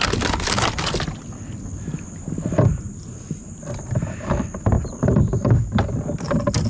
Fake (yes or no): no